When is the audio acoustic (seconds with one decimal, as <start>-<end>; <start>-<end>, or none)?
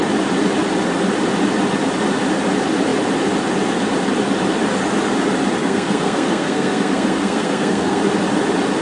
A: 0.0-5.6; 8.0-8.8